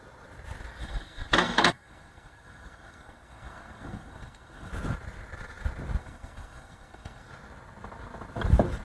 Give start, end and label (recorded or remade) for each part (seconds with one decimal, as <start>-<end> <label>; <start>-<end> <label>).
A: 0.0-0.8 recorded; 0.8-4.7 remade; 4.7-6.0 recorded; 6.0-7.3 remade; 7.3-8.8 recorded